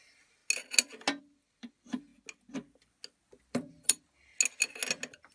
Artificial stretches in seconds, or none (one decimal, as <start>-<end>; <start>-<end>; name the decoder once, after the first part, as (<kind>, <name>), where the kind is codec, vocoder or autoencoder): 0.0-0.4 (vocoder, BigVGAN v2); 1.2-2.1; 3.3-4.3